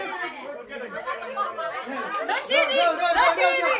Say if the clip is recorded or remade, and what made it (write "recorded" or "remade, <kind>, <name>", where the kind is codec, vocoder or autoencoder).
recorded